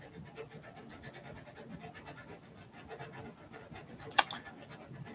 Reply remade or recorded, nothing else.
recorded